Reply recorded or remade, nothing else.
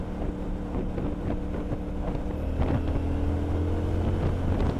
recorded